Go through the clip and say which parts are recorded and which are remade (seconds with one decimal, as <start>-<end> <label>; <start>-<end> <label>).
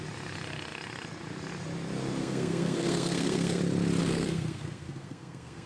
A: 0.0-2.2 recorded; 2.2-3.6 remade; 3.6-4.0 recorded; 4.0-5.7 remade